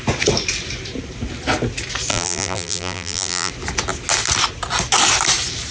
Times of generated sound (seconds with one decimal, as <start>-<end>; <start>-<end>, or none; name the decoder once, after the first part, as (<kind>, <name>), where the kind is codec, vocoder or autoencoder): 2.1-3.5 (vocoder, BigVGAN v2)